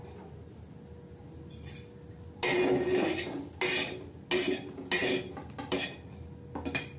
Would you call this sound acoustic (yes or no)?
yes